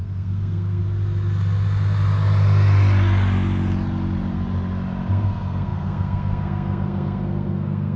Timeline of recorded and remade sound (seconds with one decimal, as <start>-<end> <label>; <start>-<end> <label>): 0.0-0.8 remade; 0.8-5.1 recorded; 5.1-8.0 remade

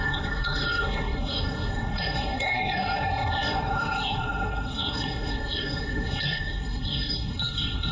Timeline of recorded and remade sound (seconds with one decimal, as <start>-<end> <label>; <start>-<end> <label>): 0.0-7.9 remade

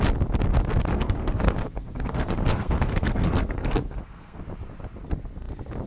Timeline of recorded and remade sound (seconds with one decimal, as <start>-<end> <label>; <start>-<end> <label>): 0.0-0.9 recorded; 0.9-4.4 remade; 4.4-5.9 recorded

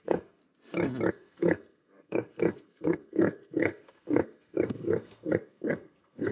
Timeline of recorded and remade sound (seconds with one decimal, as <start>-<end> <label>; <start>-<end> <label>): 0.0-0.4 remade; 0.4-1.1 recorded; 1.1-6.3 remade

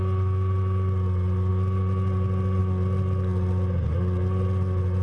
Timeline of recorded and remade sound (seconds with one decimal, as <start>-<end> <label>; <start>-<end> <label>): 0.0-5.0 recorded